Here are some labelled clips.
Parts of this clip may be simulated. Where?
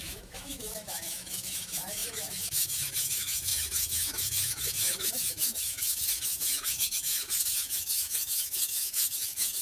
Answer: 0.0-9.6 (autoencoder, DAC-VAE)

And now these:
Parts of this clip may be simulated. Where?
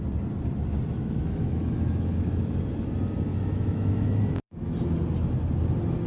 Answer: 0.9-2.5 (autoencoder, DAC-VAE); 3.3-4.2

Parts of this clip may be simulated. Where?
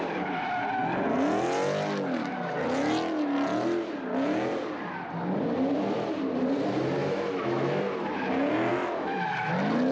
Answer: 7.0-7.8 (autoencoder, DAC-VAE); 8.7-9.5